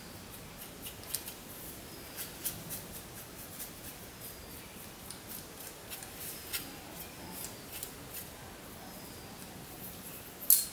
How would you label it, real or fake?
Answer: real